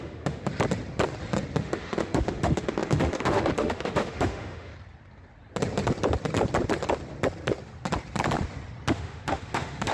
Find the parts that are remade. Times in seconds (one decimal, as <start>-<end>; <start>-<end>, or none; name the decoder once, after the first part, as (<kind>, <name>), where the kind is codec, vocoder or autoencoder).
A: 0.0-0.5 (autoencoder, DAC-VAE); 1.6-4.7; 8.9-9.9